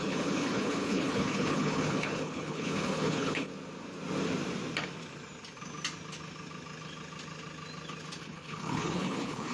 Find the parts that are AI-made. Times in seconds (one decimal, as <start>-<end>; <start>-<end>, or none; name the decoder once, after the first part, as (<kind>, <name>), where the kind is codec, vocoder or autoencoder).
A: 0.0-3.5 (codec, HILCodec); 8.2-9.5